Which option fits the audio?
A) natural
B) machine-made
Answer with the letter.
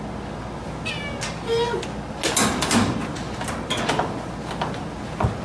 A